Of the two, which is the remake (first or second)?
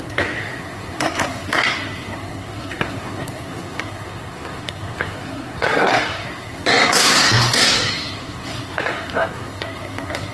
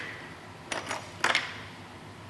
first